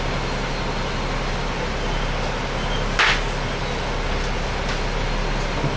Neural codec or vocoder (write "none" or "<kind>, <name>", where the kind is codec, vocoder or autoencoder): none